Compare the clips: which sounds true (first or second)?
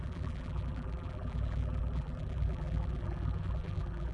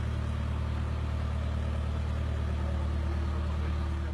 second